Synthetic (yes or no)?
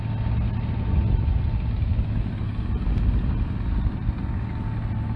no